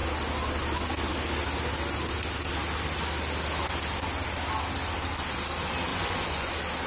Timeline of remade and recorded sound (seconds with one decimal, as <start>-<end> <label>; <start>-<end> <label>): 0.0-5.9 recorded; 5.9-6.5 remade; 6.5-6.9 recorded